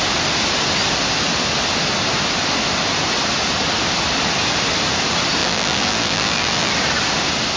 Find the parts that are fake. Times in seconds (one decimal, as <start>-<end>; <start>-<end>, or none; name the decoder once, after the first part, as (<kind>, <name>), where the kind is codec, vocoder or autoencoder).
5.4-6.7 (vocoder, BigVGAN v2)